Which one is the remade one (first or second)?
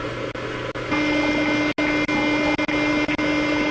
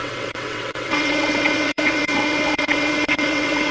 second